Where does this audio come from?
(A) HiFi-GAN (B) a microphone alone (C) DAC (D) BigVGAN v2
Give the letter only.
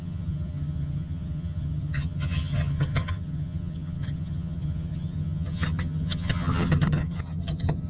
A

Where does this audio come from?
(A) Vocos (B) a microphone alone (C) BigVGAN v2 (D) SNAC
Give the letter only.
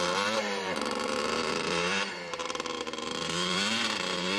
C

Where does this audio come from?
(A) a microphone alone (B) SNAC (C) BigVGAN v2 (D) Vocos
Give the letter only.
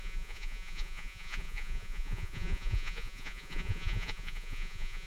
D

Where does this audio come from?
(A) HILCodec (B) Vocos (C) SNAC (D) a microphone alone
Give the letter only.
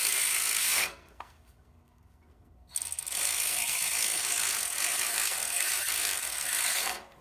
C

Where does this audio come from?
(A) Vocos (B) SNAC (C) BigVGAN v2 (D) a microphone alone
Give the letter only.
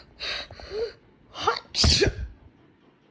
D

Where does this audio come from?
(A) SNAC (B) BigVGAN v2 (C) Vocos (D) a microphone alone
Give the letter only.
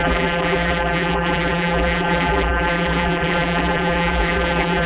B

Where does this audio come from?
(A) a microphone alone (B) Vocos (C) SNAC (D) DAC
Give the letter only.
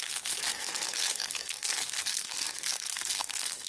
C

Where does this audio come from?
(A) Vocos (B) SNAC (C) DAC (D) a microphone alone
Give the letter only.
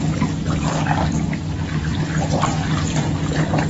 D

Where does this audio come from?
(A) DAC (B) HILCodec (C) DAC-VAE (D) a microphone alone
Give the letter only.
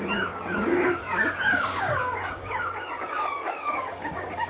A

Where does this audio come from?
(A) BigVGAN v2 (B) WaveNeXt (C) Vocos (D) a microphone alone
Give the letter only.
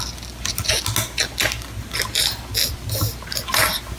D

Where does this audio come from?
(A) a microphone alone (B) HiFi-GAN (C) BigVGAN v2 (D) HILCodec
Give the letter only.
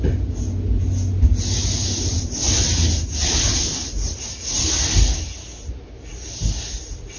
A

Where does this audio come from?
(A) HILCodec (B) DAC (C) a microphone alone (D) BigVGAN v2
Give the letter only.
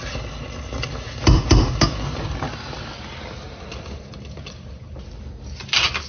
C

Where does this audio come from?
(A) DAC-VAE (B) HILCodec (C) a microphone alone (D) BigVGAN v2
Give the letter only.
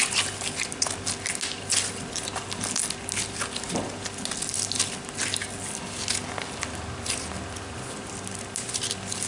C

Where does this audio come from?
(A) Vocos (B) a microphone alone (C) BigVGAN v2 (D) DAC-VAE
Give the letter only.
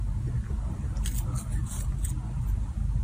B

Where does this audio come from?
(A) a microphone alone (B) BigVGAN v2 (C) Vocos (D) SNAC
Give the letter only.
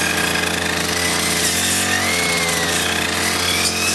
A